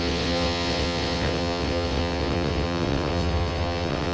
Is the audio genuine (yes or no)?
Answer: no